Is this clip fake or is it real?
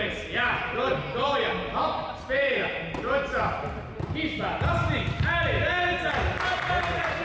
real